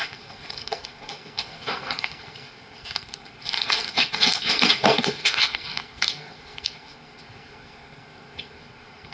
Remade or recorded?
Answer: remade